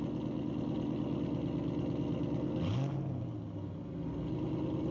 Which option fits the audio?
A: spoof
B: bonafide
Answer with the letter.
B